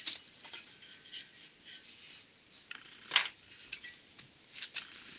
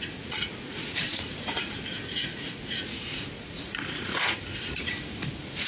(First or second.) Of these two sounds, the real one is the first